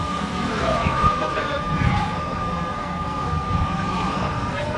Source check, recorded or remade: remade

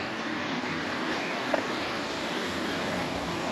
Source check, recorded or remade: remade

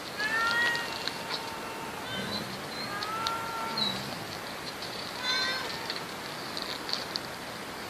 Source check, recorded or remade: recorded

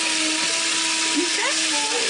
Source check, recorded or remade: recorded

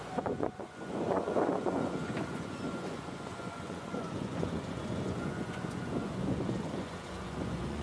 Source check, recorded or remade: remade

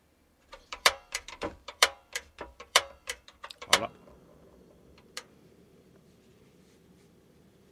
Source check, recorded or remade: remade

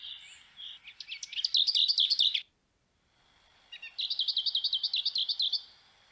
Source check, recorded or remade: recorded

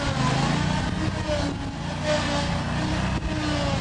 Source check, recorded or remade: recorded